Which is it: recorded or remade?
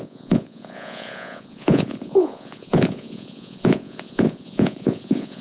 remade